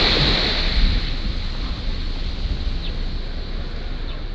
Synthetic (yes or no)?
no